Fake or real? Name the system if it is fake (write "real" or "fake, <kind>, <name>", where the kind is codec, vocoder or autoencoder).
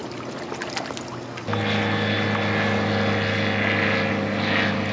real